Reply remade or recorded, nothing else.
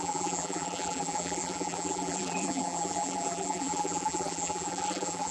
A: remade